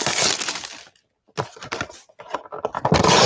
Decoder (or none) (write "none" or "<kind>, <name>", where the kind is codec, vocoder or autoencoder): none